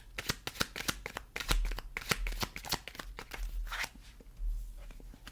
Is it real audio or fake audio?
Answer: real